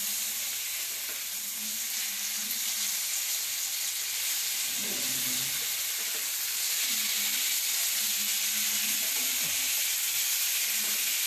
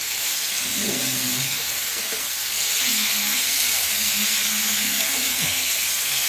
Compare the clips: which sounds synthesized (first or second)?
second